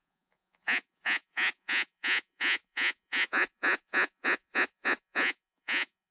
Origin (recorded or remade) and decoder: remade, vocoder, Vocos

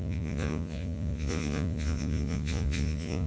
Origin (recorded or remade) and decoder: remade, vocoder, Vocos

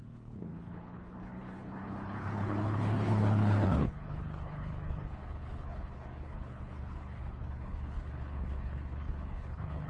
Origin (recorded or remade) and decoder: remade, codec, HILCodec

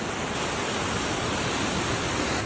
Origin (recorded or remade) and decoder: recorded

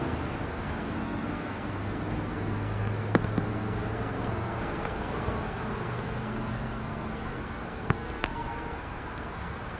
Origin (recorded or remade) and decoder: remade, codec, SNAC